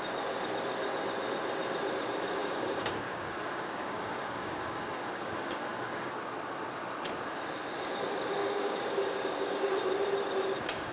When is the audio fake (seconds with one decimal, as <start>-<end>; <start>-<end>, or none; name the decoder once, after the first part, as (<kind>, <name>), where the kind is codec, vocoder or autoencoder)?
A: 2.4-6.1 (codec, DAC); 8.4-9.7